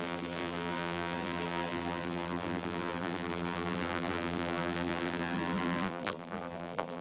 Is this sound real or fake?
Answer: fake